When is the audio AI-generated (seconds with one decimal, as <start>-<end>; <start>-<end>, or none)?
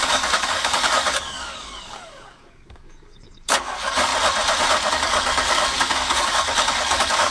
0.0-4.1; 4.9-7.3